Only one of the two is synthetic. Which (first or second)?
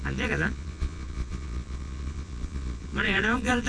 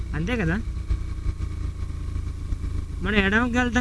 first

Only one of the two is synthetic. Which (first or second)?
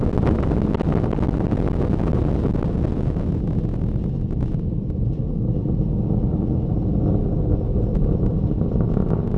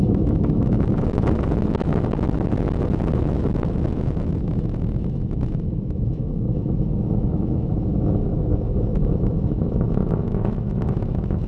second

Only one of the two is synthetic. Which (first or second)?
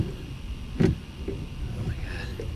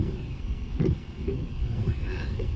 second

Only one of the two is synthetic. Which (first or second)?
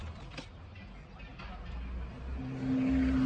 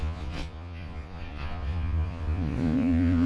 second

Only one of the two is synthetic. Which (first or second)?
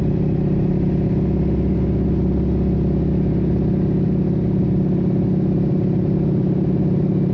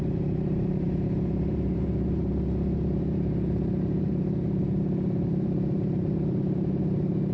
second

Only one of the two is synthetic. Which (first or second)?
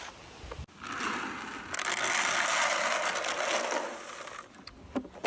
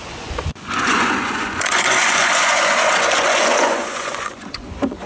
second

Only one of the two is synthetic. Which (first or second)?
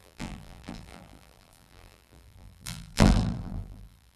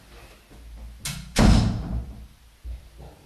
first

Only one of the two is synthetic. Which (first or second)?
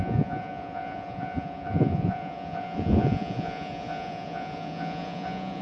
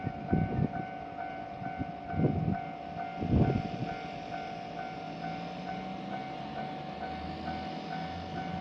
first